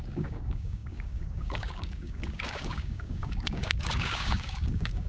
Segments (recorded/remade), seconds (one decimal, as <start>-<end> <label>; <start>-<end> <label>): 0.0-5.1 remade